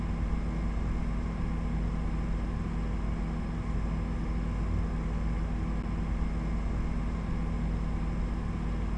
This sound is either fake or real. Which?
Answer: real